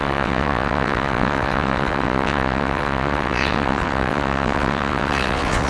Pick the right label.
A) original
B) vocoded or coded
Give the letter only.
B